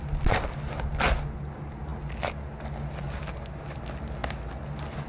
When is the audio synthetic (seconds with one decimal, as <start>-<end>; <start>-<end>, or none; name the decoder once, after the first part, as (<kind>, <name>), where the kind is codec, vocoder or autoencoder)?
none